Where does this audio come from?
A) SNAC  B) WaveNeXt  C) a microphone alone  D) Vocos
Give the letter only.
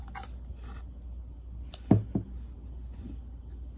C